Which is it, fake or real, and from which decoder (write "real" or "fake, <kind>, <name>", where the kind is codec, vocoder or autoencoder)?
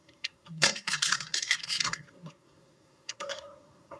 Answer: fake, codec, SNAC